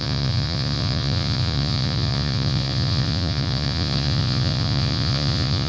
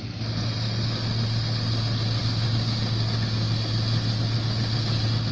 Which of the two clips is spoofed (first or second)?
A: first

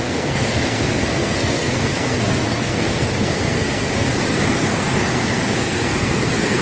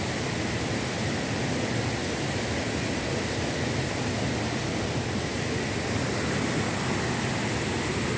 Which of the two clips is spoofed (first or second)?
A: first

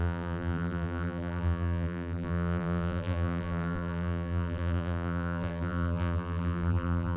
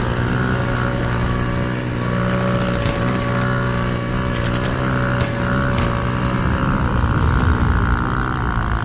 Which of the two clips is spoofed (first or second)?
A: first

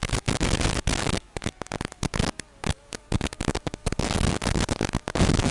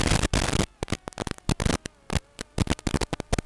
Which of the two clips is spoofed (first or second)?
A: first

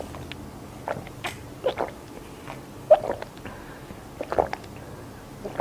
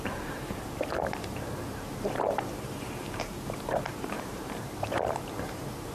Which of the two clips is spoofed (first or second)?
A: second